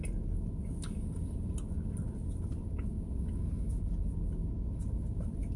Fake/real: real